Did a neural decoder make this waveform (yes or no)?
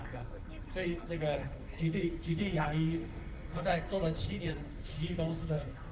yes